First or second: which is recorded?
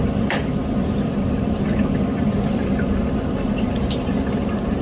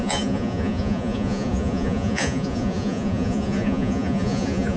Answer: first